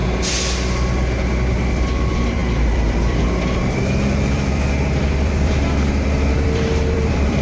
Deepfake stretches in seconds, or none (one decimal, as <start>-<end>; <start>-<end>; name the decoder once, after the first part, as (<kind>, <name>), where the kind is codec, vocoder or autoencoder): 1.7-7.4 (vocoder, BigVGAN v2)